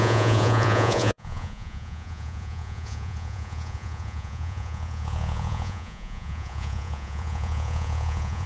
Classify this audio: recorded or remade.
remade